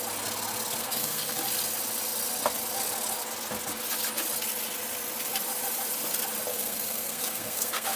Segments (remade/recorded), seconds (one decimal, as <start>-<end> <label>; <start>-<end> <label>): 0.0-0.8 recorded; 0.8-1.4 remade; 1.4-6.5 recorded; 6.5-8.0 remade